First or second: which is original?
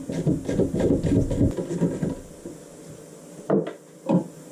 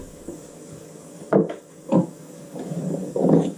first